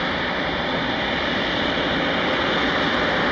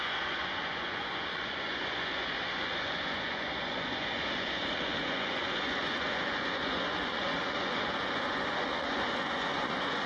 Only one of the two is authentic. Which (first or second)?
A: first